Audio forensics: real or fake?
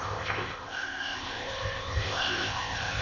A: fake